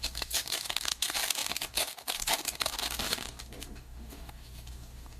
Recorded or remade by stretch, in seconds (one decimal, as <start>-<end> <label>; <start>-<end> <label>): 0.0-5.2 remade